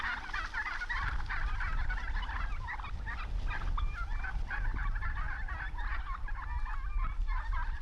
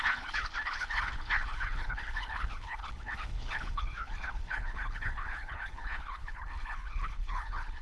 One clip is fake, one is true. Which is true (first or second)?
first